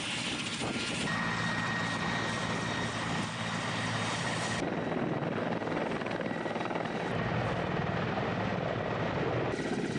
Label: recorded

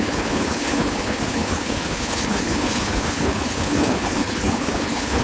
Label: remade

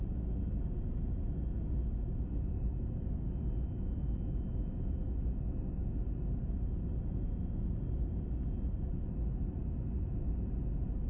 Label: recorded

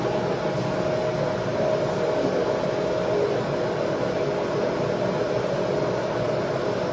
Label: recorded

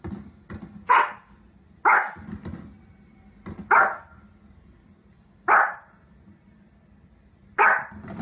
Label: recorded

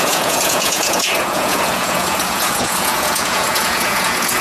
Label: remade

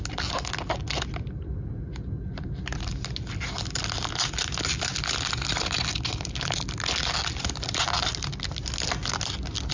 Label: recorded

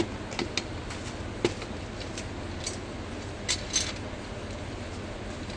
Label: recorded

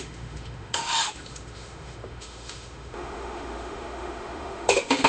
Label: remade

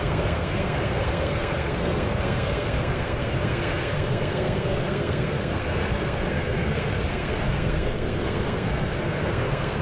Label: remade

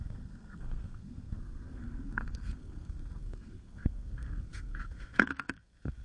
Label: remade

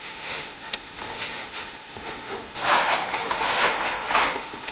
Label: remade